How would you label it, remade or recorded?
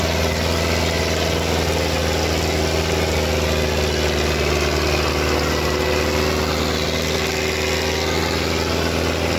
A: recorded